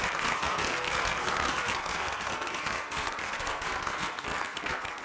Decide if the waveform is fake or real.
fake